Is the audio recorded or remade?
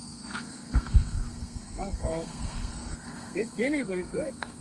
remade